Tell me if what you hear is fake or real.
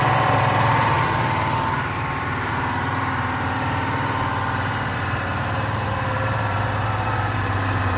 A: fake